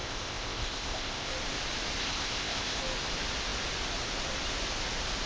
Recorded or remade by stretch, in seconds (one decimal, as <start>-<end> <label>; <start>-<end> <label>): 0.0-1.3 remade; 1.3-2.0 recorded; 2.0-2.8 remade; 2.8-5.3 recorded